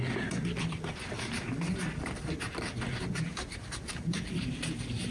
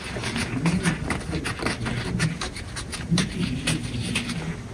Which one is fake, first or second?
first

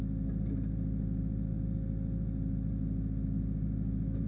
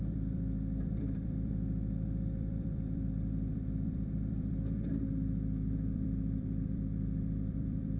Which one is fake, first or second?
second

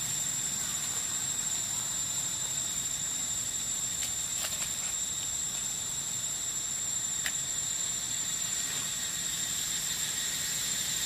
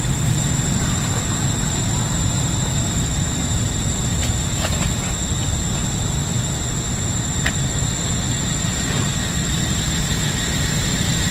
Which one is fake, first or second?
first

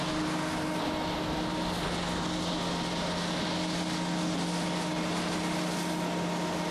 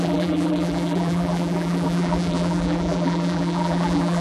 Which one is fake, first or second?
second